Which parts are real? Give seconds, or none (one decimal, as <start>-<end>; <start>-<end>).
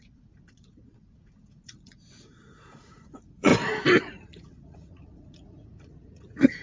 3.5-4.0